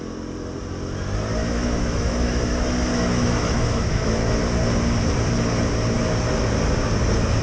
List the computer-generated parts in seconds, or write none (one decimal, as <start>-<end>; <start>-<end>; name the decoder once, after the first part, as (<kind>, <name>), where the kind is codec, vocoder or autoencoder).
1.4-2.4 (autoencoder, DAC-VAE); 2.9-4.4